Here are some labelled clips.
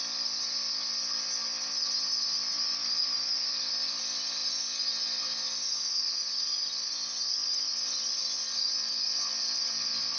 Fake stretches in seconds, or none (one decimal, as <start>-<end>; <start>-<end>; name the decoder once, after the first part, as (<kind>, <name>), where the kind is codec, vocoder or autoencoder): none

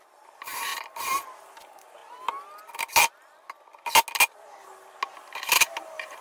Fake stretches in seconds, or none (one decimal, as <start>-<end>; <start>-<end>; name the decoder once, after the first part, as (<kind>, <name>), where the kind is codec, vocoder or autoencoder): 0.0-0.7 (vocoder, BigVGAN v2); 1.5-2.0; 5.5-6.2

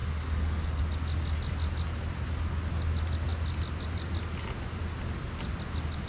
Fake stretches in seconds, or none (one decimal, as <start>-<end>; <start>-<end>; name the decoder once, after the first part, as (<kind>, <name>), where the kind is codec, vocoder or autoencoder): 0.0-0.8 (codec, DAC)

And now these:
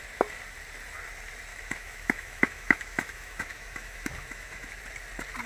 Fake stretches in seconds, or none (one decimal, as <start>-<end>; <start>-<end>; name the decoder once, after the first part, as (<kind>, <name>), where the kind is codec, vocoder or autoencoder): 1.5-4.8 (autoencoder, DAC-VAE)

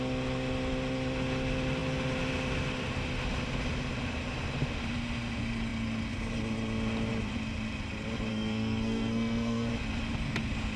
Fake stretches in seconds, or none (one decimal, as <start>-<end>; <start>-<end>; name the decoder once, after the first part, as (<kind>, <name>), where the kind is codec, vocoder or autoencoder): 8.3-9.7 (codec, SNAC)